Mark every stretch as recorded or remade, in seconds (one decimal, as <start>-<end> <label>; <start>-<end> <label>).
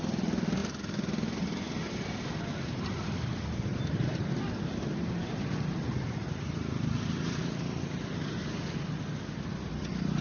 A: 0.0-10.2 recorded